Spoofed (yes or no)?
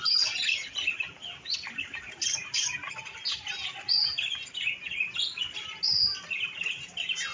no